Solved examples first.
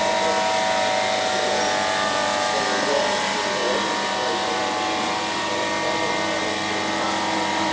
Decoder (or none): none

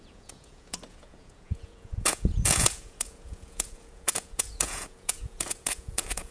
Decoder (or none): vocoder, Vocos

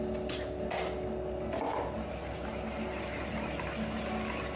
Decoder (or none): none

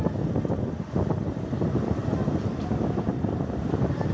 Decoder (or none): none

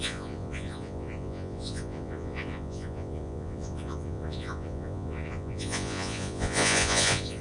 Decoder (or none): vocoder, Vocos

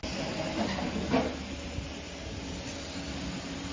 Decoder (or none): none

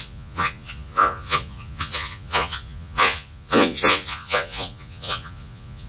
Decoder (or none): vocoder, Vocos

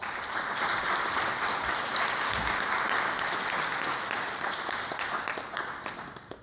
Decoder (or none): none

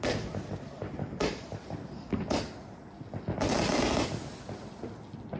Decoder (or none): none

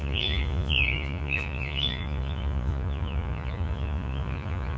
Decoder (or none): vocoder, Vocos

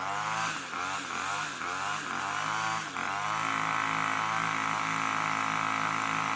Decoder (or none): none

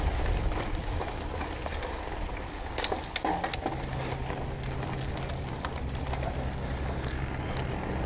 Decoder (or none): none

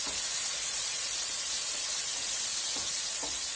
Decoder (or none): vocoder, Vocos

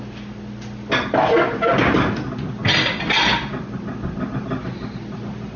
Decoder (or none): none